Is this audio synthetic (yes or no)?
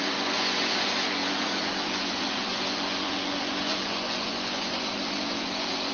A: yes